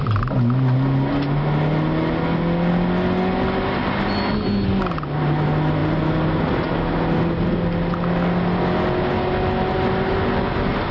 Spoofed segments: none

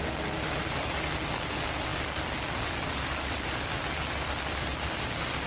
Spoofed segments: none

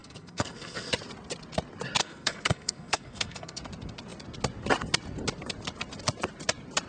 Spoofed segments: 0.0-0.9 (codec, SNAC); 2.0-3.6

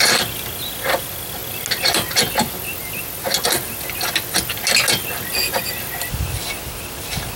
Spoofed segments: none

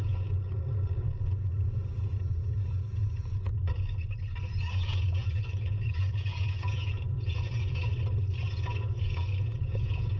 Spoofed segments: 0.0-3.6 (vocoder, Vocos); 4.5-7.9; 8.5-10.2